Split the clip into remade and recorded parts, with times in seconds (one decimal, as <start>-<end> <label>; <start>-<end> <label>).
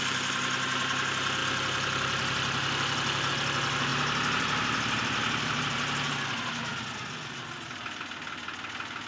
0.0-3.9 recorded; 3.9-6.1 remade; 6.1-6.7 recorded; 6.7-8.0 remade; 8.0-9.1 recorded